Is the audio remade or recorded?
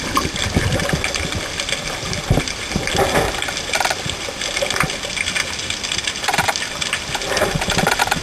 recorded